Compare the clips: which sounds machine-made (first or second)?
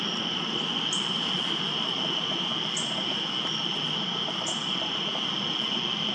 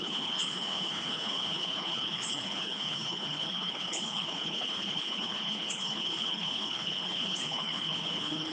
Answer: second